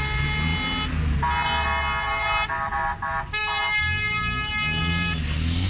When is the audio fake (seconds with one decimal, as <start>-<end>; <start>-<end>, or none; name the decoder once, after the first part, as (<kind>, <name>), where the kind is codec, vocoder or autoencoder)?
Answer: none